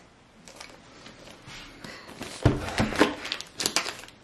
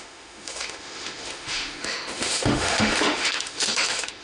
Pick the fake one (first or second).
second